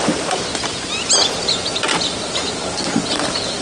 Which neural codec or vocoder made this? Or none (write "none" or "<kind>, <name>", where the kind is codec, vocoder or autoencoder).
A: none